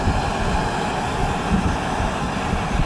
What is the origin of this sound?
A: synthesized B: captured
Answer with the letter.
B